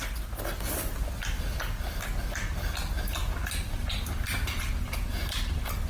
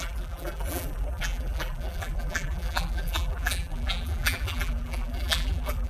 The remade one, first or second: second